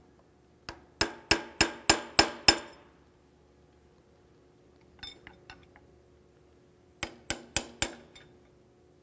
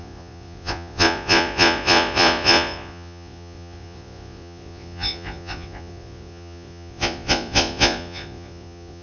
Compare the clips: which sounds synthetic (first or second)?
second